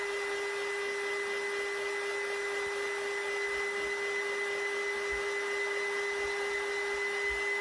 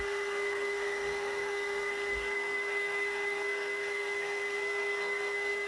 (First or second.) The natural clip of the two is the first